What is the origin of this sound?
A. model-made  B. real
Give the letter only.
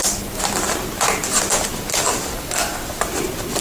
B